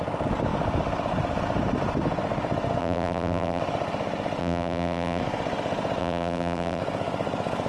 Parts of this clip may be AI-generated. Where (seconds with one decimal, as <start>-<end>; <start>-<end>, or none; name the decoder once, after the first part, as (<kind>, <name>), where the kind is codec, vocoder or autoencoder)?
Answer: 2.8-3.6 (vocoder, BigVGAN v2); 4.4-5.2; 6.0-6.8